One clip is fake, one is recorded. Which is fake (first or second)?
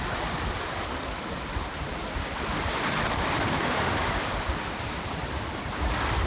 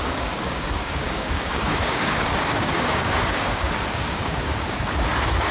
second